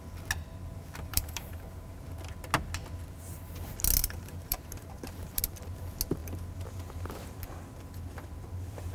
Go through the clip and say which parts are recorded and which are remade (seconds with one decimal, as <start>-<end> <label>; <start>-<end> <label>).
0.0-1.1 recorded; 1.1-1.9 remade; 1.9-4.0 recorded; 4.0-5.4 remade; 5.4-8.9 recorded

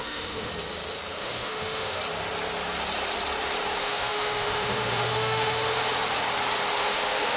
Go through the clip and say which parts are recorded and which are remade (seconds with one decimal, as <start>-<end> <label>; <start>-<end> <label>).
0.0-0.5 remade; 0.5-1.2 recorded; 1.2-2.0 remade; 2.0-3.8 recorded; 3.8-5.7 remade; 5.7-6.7 recorded; 6.7-7.4 remade

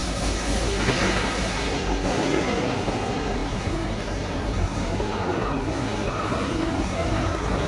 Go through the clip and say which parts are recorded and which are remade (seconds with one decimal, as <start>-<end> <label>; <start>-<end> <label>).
0.0-7.7 remade

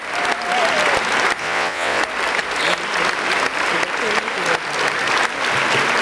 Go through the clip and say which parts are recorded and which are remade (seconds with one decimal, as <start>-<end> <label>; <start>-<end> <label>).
0.0-1.4 recorded; 1.4-2.0 remade; 2.0-6.0 recorded

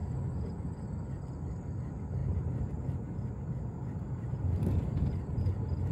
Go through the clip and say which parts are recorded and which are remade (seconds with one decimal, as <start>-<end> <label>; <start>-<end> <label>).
0.0-5.9 recorded

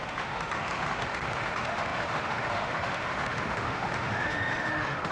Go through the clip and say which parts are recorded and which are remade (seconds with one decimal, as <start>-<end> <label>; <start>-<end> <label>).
0.0-5.1 remade

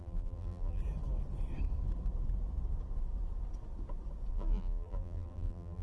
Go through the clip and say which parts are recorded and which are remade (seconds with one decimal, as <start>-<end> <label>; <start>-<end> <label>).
0.0-0.8 remade; 0.8-4.3 recorded; 4.3-5.8 remade

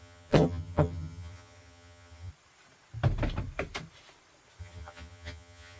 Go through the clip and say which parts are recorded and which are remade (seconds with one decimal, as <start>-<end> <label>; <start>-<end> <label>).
0.0-2.3 remade; 2.3-4.6 recorded; 4.6-5.8 remade